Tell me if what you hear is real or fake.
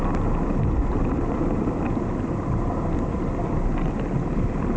real